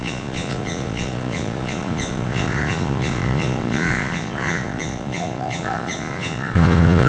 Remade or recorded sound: remade